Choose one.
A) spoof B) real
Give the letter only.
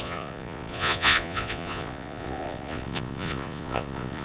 A